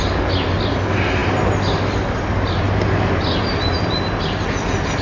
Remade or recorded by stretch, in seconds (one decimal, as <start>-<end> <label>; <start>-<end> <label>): 0.0-5.0 recorded